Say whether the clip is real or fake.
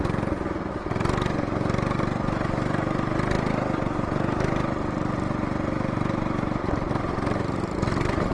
real